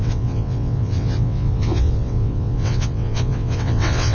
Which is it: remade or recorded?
remade